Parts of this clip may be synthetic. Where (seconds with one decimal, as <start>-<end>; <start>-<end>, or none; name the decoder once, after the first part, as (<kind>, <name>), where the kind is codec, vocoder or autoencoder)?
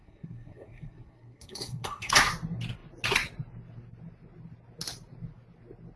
0.0-2.1 (codec, SNAC)